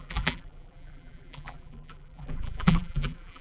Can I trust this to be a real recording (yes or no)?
no